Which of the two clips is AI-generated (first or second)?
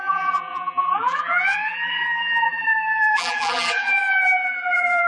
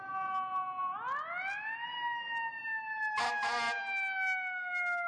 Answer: first